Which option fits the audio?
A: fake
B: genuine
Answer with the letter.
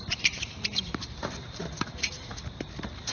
A